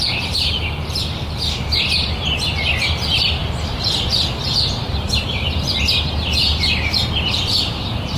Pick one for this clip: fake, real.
real